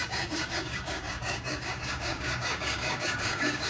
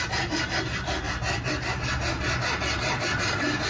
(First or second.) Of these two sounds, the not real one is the first